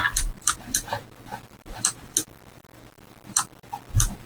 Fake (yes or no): yes